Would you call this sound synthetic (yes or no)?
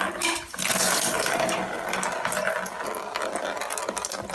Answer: no